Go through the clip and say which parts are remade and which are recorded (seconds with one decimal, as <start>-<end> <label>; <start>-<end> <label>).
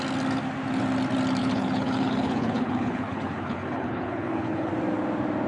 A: 0.0-1.4 recorded; 1.4-4.7 remade; 4.7-5.5 recorded